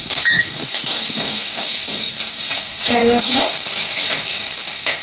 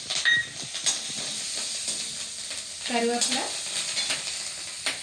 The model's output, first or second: first